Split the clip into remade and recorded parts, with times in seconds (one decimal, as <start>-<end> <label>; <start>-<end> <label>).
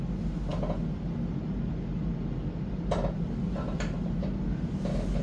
0.0-5.2 recorded